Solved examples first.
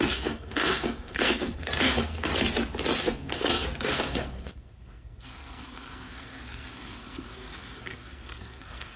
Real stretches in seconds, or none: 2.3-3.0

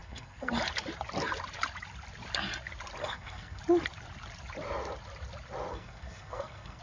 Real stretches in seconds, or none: 0.5-3.0; 3.6-5.7